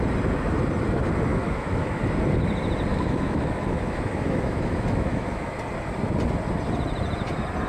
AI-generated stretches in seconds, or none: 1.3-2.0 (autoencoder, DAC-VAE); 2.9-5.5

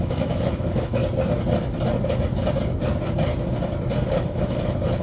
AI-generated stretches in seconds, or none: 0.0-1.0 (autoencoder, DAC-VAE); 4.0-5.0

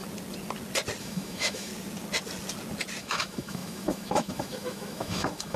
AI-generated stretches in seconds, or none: 1.0-1.7 (autoencoder, DAC-VAE); 3.0-5.6